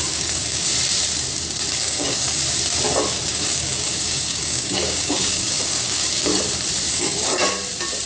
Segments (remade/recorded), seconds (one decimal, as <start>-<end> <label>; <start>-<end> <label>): 0.0-0.7 remade; 0.7-1.7 recorded; 1.7-2.4 remade; 2.4-3.3 recorded; 3.3-6.3 remade; 6.3-6.9 recorded; 6.9-7.4 remade; 7.4-8.1 recorded